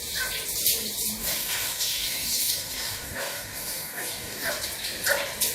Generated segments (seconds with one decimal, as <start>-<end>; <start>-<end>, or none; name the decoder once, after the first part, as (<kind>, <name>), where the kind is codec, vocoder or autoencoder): 1.2-4.5 (codec, DAC)